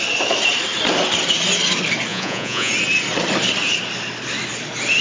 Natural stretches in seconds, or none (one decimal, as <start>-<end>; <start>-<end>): 0.0-2.1; 2.7-5.0